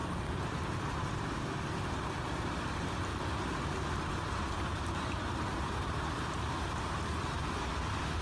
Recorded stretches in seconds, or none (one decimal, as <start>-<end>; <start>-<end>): 1.1-3.1; 7.6-8.2